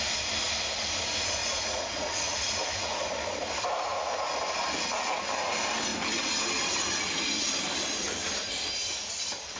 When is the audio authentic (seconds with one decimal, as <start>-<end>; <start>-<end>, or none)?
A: 0.0-1.4; 3.1-9.6